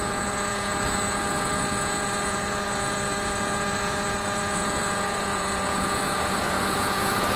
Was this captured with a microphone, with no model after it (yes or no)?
no